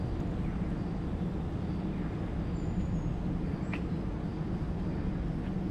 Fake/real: real